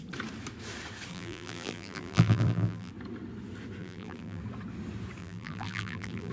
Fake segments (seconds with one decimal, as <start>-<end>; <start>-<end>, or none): 1.1-2.9; 3.8-4.4; 5.2-6.3